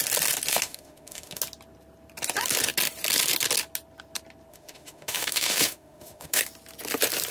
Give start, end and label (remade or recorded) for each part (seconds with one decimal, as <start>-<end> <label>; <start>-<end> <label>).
0.0-0.5 recorded; 0.5-1.4 remade; 1.4-4.5 recorded; 4.5-6.4 remade; 6.4-7.3 recorded